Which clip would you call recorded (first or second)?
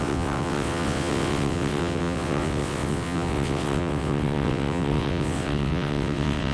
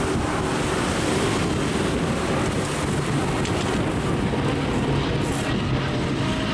second